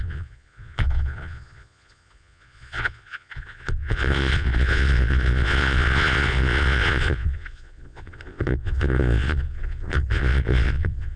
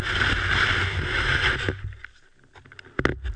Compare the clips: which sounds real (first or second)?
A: second